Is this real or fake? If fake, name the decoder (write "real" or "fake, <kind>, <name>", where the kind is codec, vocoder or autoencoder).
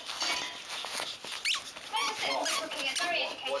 real